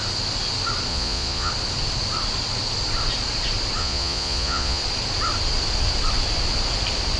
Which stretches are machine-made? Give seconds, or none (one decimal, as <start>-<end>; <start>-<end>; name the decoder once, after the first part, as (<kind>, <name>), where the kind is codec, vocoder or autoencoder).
0.9-1.5 (vocoder, Vocos); 3.8-4.8